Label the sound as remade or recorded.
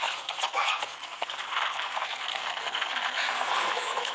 remade